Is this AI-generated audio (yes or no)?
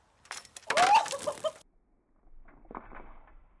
no